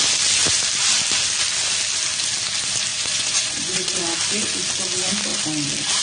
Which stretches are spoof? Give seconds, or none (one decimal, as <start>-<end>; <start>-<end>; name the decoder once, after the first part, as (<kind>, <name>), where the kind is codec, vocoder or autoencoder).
2.9-4.0 (vocoder, Vocos)